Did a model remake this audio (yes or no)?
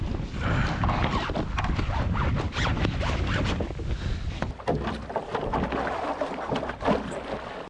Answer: no